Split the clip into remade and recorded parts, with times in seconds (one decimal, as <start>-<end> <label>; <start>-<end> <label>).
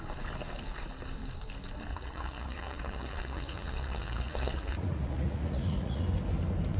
0.0-1.9 recorded; 1.9-6.0 remade; 6.0-6.8 recorded